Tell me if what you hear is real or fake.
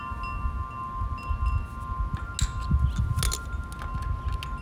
real